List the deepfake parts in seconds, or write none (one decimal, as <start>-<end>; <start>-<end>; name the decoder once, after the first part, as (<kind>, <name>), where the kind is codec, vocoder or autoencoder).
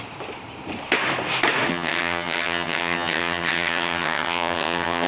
1.7-5.1 (vocoder, HiFi-GAN)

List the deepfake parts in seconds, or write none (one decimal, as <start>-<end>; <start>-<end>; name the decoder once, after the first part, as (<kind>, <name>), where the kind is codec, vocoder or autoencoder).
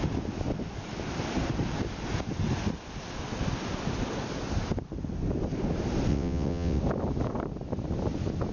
6.1-6.8 (vocoder, WaveNeXt)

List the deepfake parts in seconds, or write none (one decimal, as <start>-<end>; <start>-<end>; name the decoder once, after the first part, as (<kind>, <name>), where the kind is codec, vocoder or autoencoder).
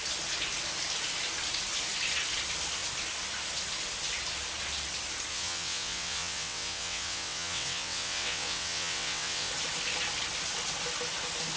5.3-9.5 (vocoder, WaveNeXt)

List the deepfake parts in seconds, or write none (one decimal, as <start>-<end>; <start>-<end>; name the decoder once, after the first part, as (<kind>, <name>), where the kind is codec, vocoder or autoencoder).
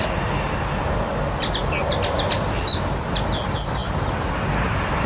none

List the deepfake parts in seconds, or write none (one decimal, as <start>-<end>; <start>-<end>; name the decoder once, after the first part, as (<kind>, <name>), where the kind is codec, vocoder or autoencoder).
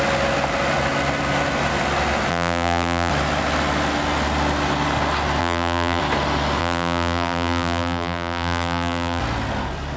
2.3-3.1 (vocoder, BigVGAN v2); 5.4-6.0; 6.6-9.2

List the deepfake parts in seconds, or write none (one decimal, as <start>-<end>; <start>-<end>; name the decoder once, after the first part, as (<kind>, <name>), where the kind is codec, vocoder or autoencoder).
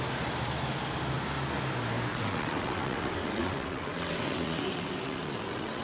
2.1-5.8 (vocoder, WaveNeXt)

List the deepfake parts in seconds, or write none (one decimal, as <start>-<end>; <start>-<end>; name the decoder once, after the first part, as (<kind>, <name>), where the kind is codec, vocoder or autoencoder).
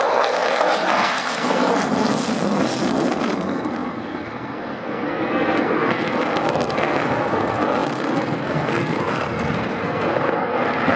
0.0-11.0 (codec, SNAC)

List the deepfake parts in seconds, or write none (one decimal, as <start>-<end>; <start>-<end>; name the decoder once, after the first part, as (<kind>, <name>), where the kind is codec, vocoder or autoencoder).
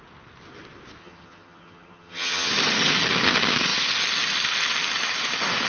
1.0-2.5 (vocoder, HiFi-GAN)